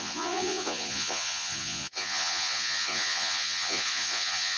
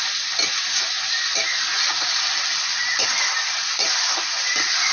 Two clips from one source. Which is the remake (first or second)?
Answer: first